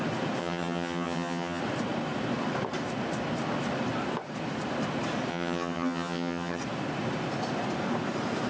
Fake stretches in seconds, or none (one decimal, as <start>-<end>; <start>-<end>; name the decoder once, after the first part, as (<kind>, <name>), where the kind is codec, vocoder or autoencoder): 0.4-1.6 (vocoder, HiFi-GAN); 5.3-6.6